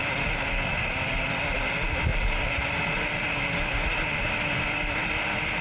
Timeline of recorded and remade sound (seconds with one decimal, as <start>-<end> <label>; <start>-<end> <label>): 0.0-5.6 recorded